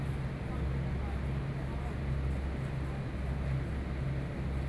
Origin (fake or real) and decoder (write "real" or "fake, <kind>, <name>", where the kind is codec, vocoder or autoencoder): real